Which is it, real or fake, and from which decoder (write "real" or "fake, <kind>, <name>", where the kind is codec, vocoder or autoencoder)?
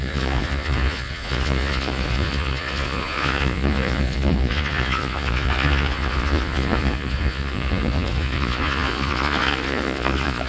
fake, vocoder, Vocos